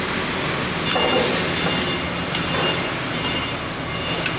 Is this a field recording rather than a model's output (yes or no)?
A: yes